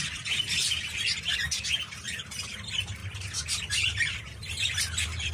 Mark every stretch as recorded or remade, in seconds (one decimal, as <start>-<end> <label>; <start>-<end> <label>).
0.0-5.3 recorded